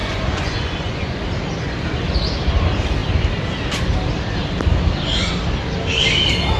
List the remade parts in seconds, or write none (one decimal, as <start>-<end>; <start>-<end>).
0.0-1.2